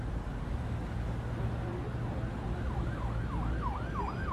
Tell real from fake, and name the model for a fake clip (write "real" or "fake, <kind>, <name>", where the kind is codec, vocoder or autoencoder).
real